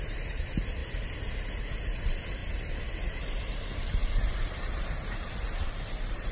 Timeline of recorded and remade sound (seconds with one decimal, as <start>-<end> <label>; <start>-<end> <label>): 0.0-0.8 remade; 0.8-1.6 recorded; 1.6-6.3 remade